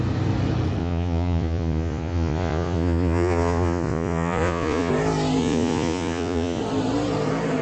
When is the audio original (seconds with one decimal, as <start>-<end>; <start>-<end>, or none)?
0.0-0.8; 4.9-5.4; 6.6-7.6